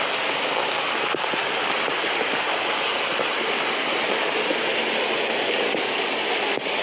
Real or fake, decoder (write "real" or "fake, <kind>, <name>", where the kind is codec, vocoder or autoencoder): real